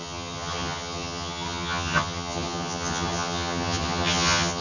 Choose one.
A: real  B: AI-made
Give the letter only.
B